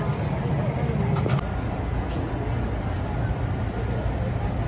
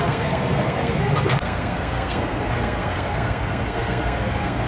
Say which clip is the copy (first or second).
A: second